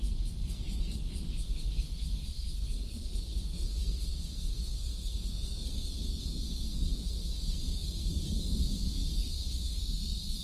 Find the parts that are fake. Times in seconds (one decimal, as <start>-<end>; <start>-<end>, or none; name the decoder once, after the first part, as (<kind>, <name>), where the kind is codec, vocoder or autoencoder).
0.0-10.4 (codec, SNAC)